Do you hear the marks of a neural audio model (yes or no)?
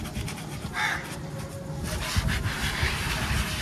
no